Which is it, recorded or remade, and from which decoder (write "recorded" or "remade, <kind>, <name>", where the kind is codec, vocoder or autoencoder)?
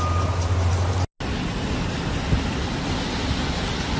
recorded